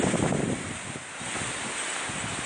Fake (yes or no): no